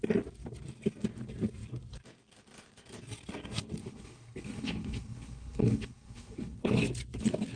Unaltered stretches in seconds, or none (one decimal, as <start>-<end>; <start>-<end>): 0.0-3.8; 6.7-7.6